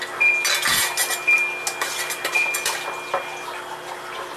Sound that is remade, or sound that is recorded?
recorded